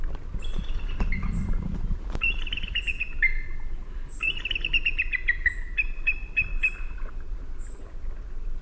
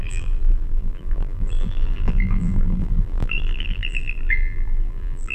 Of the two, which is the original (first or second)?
first